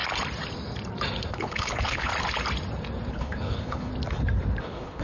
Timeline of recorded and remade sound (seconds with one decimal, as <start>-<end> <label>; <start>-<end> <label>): 0.0-1.3 recorded; 1.3-2.1 remade; 2.1-3.1 recorded; 3.1-3.9 remade; 3.9-4.6 recorded; 4.6-5.0 remade